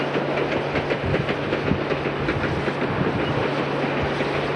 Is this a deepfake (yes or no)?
no